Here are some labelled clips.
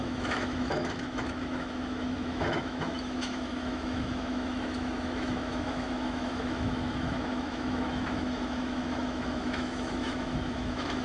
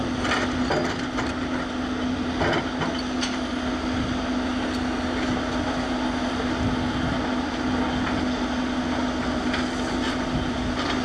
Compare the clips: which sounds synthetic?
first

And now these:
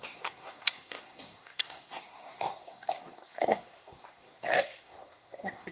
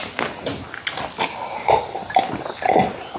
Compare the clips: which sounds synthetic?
first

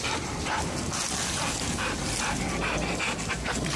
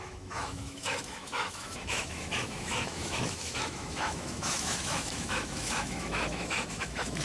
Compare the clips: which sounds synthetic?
second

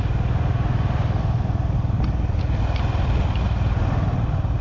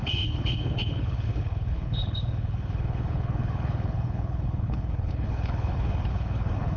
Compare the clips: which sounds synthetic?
second